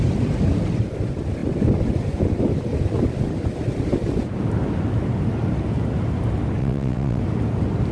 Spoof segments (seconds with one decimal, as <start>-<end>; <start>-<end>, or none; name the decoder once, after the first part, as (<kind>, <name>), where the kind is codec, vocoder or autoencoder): 6.6-7.2 (vocoder, WaveNeXt)